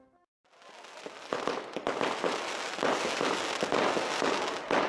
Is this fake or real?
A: real